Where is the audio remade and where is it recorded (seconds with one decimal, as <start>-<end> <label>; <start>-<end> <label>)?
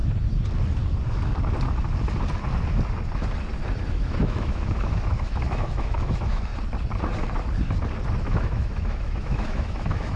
0.0-3.9 recorded; 3.9-6.5 remade; 6.5-8.2 recorded; 8.2-10.2 remade